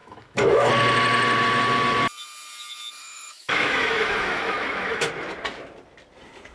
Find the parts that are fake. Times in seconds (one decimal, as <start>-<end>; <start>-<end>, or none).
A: 0.0-0.7; 3.0-5.1

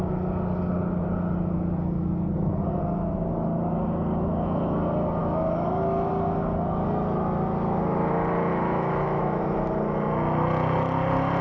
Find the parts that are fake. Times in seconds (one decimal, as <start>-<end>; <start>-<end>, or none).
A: 5.2-6.1; 8.5-9.4

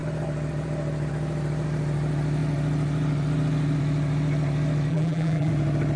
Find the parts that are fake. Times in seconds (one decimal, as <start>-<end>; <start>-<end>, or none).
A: 4.9-5.5

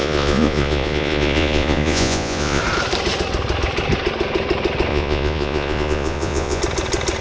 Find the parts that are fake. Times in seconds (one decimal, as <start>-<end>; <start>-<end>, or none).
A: 0.0-2.6; 4.9-6.6

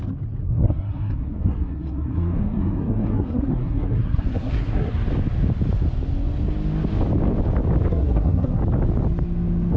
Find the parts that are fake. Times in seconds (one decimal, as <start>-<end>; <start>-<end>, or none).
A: 0.4-4.9; 7.9-8.6

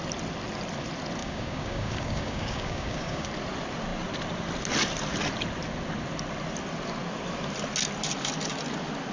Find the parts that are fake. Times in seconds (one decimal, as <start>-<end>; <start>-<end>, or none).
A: 1.2-3.3

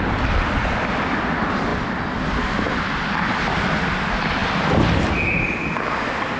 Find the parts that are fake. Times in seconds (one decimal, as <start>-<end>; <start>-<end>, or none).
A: none